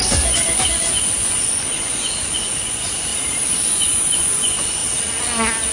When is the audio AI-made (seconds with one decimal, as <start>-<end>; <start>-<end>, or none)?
0.0-3.1; 3.7-4.8